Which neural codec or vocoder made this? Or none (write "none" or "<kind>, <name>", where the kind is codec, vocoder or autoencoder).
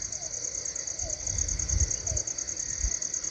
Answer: none